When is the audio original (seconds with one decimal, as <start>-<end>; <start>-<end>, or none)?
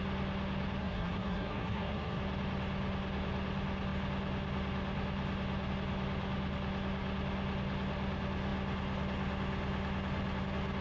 0.0-0.8; 2.2-10.8